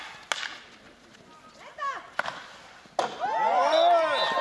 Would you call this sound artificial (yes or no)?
no